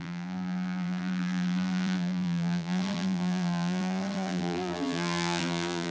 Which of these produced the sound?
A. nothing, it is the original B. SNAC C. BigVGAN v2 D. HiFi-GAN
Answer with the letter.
C